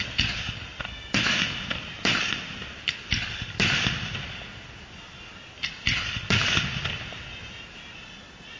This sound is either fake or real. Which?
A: real